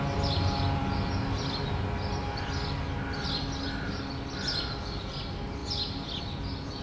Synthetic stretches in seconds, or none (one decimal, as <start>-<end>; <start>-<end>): none

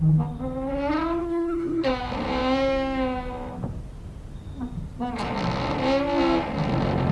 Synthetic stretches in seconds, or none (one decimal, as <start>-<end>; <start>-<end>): 1.2-1.9

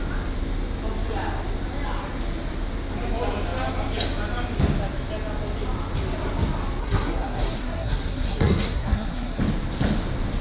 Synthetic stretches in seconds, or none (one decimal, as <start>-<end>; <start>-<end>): 6.8-9.4

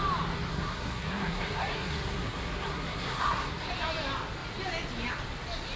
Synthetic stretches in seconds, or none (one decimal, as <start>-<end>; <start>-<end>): 0.5-3.7